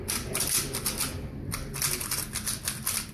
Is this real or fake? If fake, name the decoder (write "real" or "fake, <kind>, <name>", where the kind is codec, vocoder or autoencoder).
real